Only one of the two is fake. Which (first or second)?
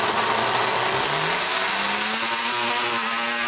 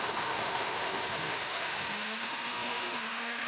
second